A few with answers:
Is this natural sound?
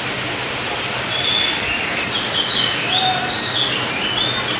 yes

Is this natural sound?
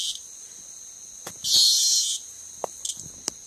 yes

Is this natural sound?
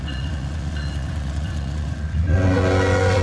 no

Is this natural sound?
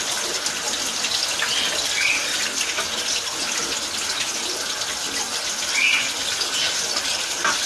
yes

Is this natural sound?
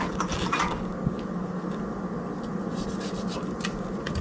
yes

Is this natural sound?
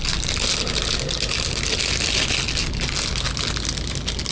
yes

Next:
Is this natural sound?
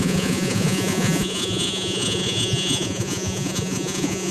no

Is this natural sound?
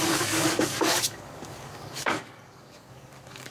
no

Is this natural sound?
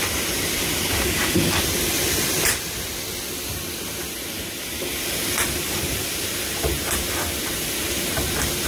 no